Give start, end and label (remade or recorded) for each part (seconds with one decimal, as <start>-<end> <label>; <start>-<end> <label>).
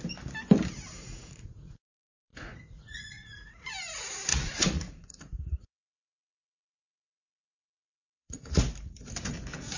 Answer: 0.0-1.0 recorded; 1.0-1.8 remade; 1.8-2.3 recorded; 2.3-3.7 remade; 3.7-4.3 recorded; 4.3-8.6 remade; 8.6-9.8 recorded